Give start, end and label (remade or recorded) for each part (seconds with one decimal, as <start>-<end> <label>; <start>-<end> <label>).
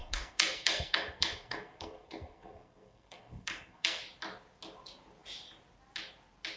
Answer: 0.0-4.0 remade; 4.0-6.6 recorded